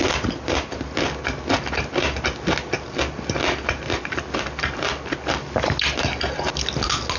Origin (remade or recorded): recorded